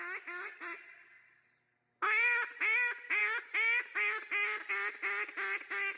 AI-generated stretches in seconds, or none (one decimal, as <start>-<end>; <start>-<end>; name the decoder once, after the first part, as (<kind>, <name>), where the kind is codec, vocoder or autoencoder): none